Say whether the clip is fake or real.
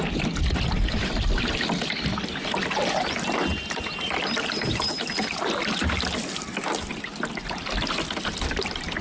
real